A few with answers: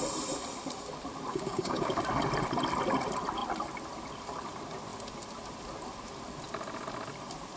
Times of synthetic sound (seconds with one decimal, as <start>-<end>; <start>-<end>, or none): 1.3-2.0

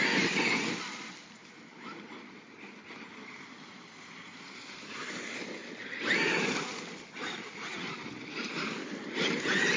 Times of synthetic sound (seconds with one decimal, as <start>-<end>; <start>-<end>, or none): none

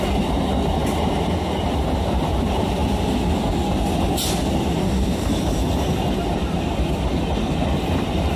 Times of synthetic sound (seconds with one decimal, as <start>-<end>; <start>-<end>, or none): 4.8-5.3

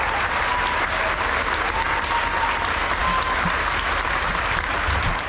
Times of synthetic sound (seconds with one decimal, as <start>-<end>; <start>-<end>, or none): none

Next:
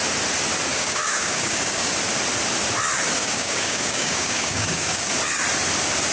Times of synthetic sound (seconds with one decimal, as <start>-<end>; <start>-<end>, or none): 0.7-1.9; 3.2-5.1

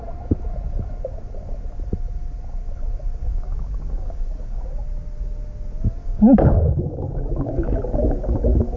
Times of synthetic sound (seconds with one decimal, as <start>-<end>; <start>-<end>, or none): 3.2-4.6; 6.0-7.7